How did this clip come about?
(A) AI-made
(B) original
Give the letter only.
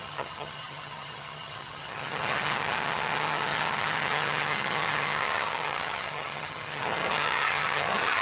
A